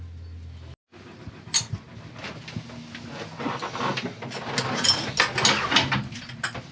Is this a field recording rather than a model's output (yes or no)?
yes